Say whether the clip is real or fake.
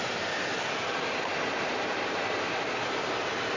real